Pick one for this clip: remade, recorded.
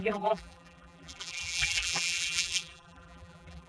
remade